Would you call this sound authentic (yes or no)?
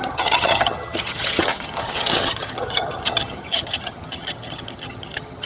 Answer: no